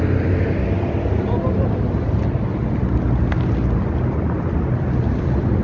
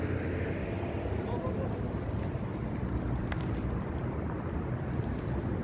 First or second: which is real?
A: first